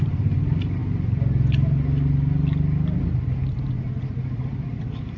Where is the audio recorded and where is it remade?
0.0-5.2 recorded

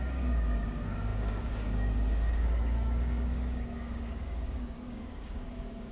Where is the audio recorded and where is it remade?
0.0-5.9 remade

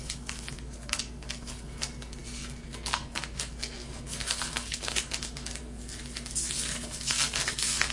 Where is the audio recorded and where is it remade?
0.0-7.9 remade

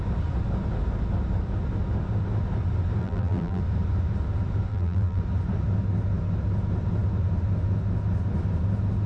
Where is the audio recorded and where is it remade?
0.0-3.0 recorded; 3.0-3.6 remade; 3.6-4.7 recorded; 4.7-5.2 remade; 5.2-9.1 recorded